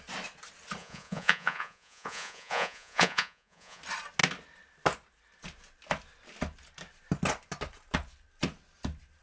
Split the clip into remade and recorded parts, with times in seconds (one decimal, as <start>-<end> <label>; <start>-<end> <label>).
0.0-0.8 recorded; 0.8-3.8 remade; 3.8-9.2 recorded